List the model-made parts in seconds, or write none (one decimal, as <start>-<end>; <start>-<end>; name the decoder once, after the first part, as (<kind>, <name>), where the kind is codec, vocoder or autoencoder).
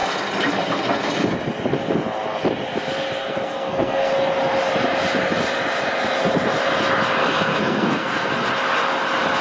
3.2-4.1 (codec, SNAC); 7.2-8.3